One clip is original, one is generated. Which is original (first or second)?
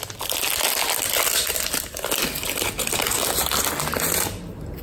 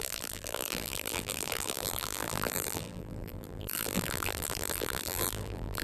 first